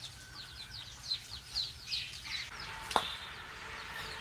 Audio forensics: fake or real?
real